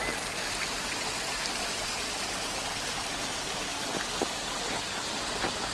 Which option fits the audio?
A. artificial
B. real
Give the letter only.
B